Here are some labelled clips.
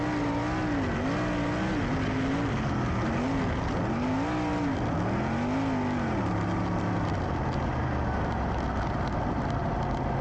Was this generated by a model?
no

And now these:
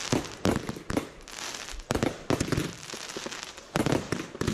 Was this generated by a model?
no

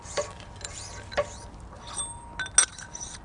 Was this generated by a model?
no